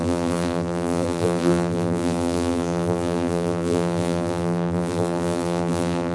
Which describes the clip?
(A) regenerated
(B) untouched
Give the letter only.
A